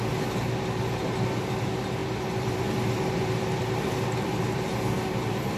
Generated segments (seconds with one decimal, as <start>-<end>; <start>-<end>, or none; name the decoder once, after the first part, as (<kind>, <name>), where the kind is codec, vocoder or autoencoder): 2.0-5.6 (vocoder, BigVGAN v2)